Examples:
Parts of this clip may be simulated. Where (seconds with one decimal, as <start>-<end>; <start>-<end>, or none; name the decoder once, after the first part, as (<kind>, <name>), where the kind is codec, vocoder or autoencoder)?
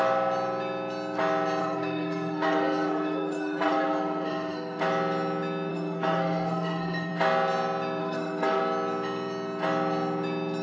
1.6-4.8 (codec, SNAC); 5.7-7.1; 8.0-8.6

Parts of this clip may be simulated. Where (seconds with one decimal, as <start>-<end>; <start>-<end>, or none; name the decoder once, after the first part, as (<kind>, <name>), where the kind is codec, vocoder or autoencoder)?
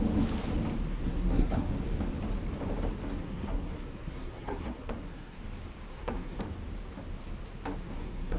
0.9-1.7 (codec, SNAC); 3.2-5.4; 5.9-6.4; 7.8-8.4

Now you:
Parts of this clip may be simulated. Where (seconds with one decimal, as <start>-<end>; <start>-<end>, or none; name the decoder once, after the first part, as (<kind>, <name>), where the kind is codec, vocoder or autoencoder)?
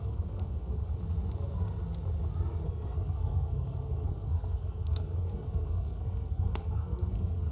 0.0-1.0 (codec, SNAC); 2.6-7.5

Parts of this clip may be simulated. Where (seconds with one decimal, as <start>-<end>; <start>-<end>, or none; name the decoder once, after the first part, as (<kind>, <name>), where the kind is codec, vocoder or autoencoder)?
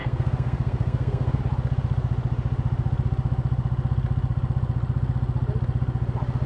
0.0-1.4 (codec, SNAC)